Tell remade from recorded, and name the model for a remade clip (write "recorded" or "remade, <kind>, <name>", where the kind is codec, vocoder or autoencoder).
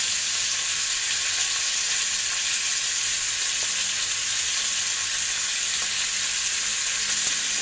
recorded